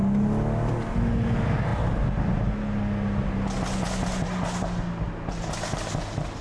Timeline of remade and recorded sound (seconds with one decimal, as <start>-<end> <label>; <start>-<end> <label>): 0.0-6.4 recorded